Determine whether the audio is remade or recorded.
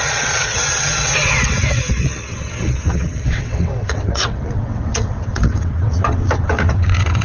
remade